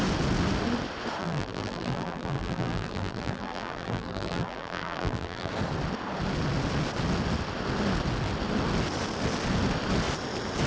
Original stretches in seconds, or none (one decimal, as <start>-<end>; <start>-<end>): 0.0-1.2; 5.5-10.7